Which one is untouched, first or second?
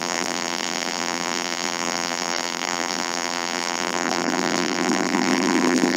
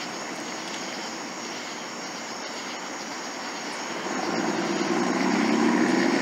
second